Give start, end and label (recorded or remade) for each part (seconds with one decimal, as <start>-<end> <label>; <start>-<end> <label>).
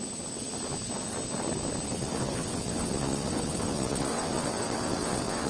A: 0.0-1.9 recorded; 1.9-5.5 remade